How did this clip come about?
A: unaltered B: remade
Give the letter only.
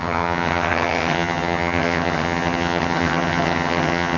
B